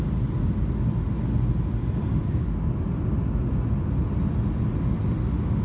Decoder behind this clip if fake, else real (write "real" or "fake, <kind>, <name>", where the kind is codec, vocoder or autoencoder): real